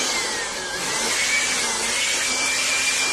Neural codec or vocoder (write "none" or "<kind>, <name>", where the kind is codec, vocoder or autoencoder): none